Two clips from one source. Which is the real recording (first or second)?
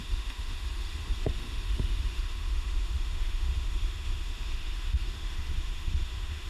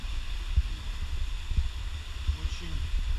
second